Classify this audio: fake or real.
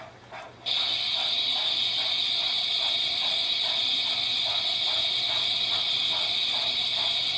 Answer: real